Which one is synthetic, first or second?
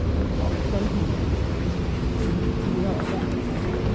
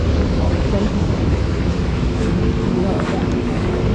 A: second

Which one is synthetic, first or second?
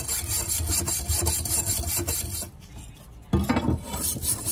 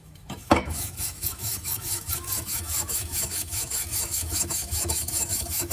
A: second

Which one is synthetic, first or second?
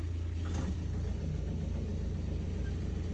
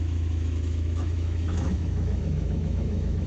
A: second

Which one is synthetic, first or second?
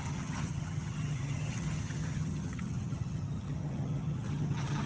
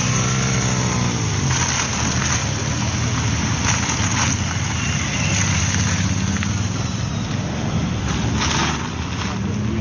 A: first